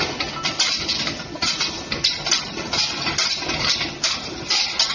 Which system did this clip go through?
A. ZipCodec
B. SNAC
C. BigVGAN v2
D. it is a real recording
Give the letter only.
D